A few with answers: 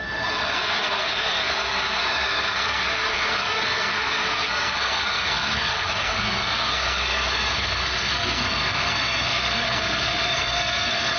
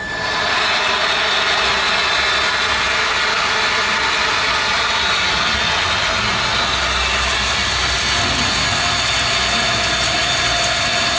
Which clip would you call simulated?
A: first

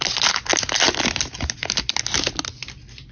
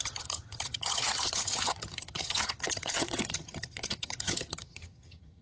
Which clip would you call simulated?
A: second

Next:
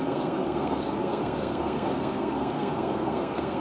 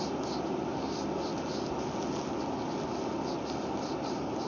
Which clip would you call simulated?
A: first